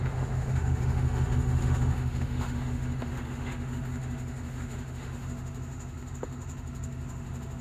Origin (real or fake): fake